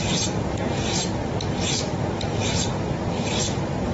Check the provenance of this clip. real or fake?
real